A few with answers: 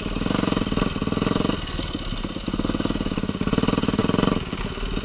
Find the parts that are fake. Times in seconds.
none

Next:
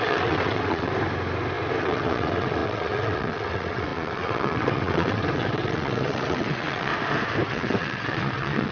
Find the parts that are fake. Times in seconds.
0.0-0.9 (vocoder, WaveNeXt); 1.8-6.9; 7.5-8.7

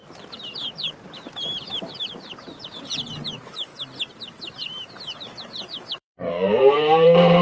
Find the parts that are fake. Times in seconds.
1.5-3.7 (vocoder, BigVGAN v2); 4.2-7.4

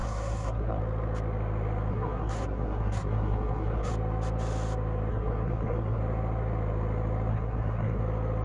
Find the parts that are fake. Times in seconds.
0.0-0.8 (codec, SNAC); 1.9-3.9; 5.1-6.0; 7.3-8.0

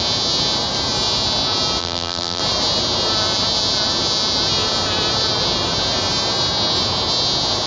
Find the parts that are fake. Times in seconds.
1.8-2.4 (vocoder, BigVGAN v2)

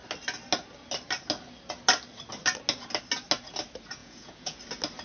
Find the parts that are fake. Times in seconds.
4.0-4.6 (vocoder, Vocos)